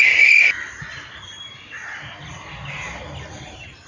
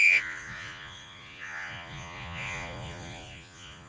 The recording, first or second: first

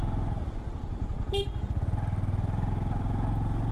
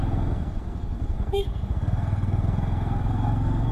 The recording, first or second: first